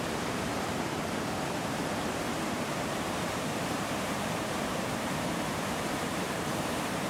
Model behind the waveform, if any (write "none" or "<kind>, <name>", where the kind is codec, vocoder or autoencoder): vocoder, BigVGAN v2